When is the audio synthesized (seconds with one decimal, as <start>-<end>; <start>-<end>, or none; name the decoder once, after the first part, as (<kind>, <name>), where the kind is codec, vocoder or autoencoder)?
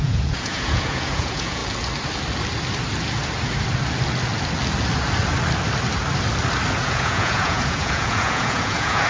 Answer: 0.0-1.6 (vocoder, Vocos); 6.7-9.1